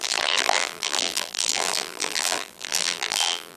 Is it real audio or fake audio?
fake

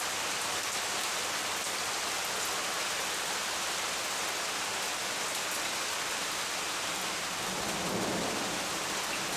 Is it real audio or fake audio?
real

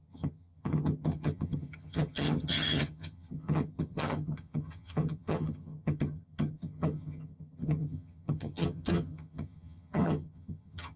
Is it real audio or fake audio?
fake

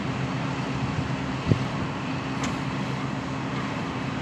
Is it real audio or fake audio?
real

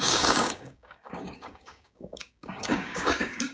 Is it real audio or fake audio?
fake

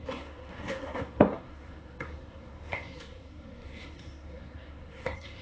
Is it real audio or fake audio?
fake